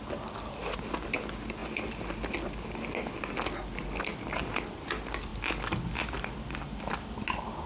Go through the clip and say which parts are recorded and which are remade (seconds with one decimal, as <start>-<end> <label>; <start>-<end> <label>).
0.0-7.7 recorded